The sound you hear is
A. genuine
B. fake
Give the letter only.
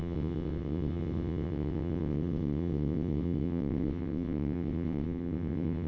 B